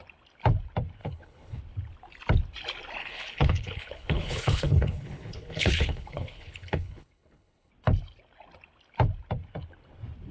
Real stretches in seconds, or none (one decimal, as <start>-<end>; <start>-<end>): 0.0-1.0; 1.6-3.0; 7.7-10.3

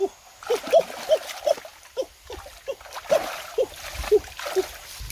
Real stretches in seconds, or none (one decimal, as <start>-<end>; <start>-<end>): 0.0-5.1

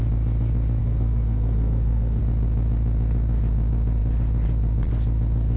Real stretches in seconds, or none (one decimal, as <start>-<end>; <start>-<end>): 0.0-0.8; 2.2-5.6

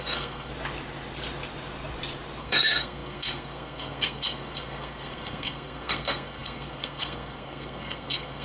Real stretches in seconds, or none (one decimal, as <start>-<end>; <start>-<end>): 0.5-2.4

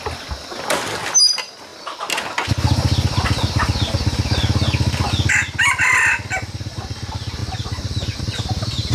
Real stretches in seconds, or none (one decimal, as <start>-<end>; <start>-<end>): 0.0-8.9

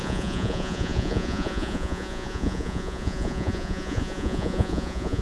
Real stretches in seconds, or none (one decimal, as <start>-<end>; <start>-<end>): none

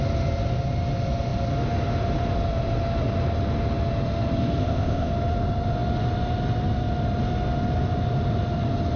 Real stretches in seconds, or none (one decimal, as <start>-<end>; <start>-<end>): 0.0-4.6; 5.1-9.0

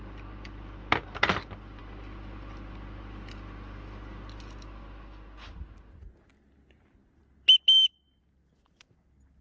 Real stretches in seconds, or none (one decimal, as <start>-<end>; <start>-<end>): 0.0-9.4